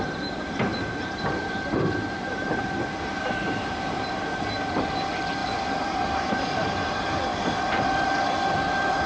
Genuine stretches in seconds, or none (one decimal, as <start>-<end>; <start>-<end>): 0.0-0.7; 4.4-5.4; 6.3-9.1